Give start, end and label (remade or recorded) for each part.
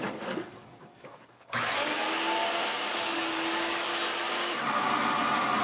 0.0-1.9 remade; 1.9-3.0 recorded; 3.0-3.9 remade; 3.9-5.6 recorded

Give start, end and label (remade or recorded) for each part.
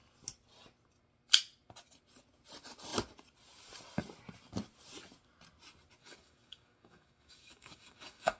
0.0-6.0 recorded; 6.0-8.4 remade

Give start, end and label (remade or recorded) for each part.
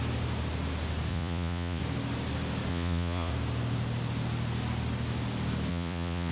0.0-1.1 recorded; 1.1-1.8 remade; 1.8-2.7 recorded; 2.7-3.3 remade; 3.3-5.7 recorded; 5.7-6.3 remade